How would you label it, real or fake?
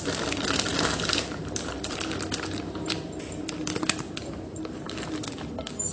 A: fake